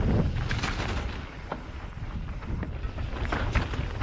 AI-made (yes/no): no